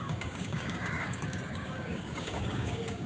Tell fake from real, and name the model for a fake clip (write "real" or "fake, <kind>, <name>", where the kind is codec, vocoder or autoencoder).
fake, codec, DAC